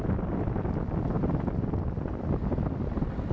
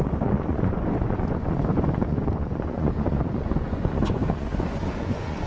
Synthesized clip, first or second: second